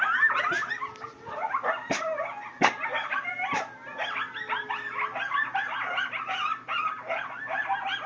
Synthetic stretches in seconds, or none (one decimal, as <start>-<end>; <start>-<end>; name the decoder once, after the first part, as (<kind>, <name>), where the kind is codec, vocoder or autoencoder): none